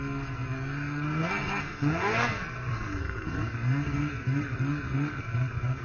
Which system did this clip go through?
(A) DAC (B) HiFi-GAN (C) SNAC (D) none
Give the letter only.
C